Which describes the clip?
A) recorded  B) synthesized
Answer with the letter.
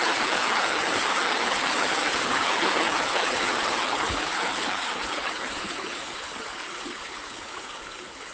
B